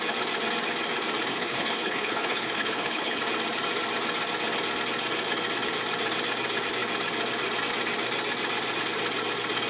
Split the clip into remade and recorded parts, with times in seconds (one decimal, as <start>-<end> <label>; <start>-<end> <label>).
0.0-1.3 recorded; 1.3-3.2 remade; 3.2-9.7 recorded